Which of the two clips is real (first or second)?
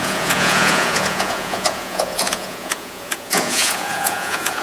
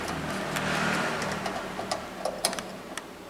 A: second